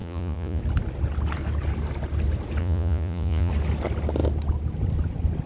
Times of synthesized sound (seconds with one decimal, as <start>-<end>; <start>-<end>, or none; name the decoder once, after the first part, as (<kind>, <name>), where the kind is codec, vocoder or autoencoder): 0.0-0.6 (vocoder, Vocos); 2.6-3.5